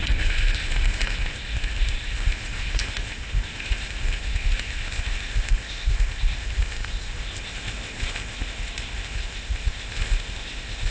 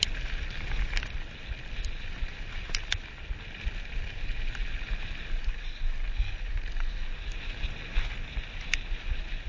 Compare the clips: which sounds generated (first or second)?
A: first